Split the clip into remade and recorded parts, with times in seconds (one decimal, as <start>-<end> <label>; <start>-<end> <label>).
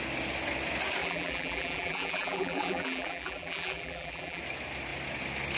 0.0-1.0 recorded; 1.0-4.4 remade; 4.4-5.6 recorded